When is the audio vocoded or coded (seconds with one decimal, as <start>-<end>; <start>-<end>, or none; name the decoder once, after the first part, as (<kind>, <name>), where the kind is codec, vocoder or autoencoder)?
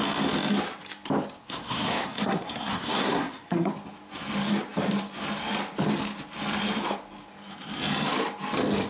1.4-3.7 (codec, SNAC)